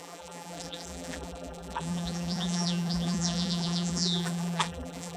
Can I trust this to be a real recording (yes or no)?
no